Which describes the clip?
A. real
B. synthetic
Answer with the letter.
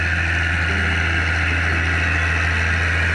A